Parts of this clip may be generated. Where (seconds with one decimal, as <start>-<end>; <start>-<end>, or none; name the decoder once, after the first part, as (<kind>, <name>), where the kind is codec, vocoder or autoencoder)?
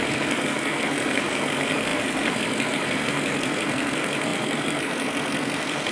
0.0-5.9 (codec, SNAC)